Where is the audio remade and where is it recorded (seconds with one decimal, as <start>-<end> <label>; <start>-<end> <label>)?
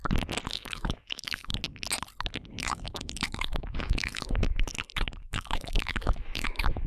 0.0-0.5 recorded; 0.5-1.5 remade; 1.5-2.6 recorded; 2.6-4.7 remade; 4.7-5.2 recorded; 5.2-6.9 remade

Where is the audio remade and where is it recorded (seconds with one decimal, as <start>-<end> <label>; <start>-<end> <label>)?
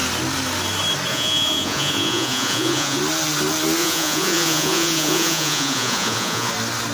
0.0-1.1 recorded; 1.1-3.0 remade; 3.0-3.8 recorded; 3.8-6.5 remade; 6.5-6.9 recorded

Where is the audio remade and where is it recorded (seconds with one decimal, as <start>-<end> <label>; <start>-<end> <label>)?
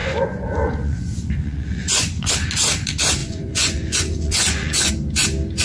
0.0-2.3 remade; 2.3-3.2 recorded; 3.2-4.9 remade; 4.9-5.6 recorded